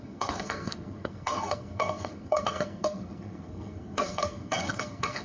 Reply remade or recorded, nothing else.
remade